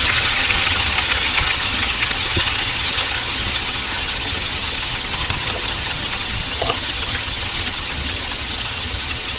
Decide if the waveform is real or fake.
fake